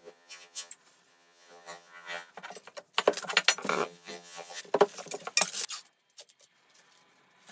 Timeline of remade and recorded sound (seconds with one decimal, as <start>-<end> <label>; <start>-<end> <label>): 0.0-0.7 remade; 0.7-1.1 recorded; 1.1-2.3 remade; 2.3-3.7 recorded; 3.7-4.6 remade; 4.6-7.5 recorded

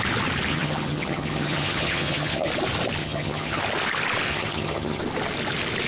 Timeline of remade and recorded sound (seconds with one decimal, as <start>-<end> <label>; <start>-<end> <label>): 0.0-0.5 recorded; 0.5-2.5 remade; 2.5-3.0 recorded; 3.0-3.6 remade; 3.6-4.3 recorded; 4.3-5.0 remade; 5.0-5.9 recorded

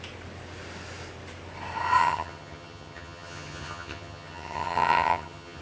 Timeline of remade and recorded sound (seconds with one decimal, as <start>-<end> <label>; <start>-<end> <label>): 0.0-2.0 recorded; 2.0-5.6 remade

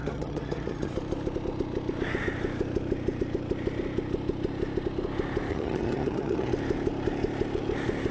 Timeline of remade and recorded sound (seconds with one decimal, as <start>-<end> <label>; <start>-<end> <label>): 0.0-0.9 remade; 0.9-5.5 recorded; 5.5-6.5 remade; 6.5-8.1 recorded

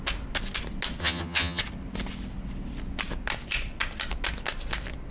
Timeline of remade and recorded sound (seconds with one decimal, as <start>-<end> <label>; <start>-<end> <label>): 0.0-1.0 recorded; 1.0-1.6 remade; 1.6-5.1 recorded

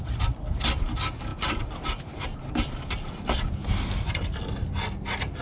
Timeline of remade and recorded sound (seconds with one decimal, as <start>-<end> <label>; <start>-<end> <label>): 0.0-5.4 recorded

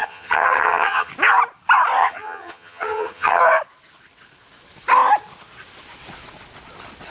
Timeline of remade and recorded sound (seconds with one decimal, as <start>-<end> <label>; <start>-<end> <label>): 0.0-1.1 remade; 1.1-2.0 recorded; 2.0-3.4 remade; 3.4-7.1 recorded

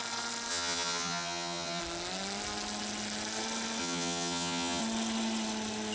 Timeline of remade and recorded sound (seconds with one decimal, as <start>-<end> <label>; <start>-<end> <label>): 0.0-0.5 recorded; 0.5-1.8 remade; 1.8-3.8 recorded; 3.8-4.8 remade; 4.8-5.9 recorded